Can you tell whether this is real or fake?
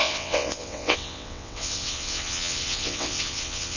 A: fake